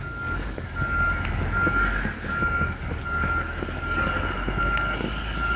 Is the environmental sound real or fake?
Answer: fake